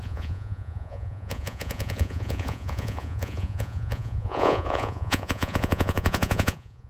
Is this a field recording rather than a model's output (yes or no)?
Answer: no